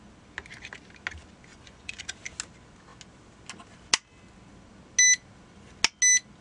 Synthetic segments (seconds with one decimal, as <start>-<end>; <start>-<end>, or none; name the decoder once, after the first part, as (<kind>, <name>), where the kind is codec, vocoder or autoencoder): 1.5-2.0 (vocoder, Vocos)